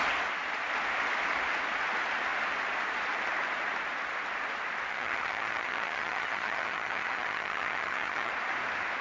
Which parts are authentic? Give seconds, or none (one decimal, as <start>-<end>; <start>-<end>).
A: 0.0-4.9; 8.3-9.0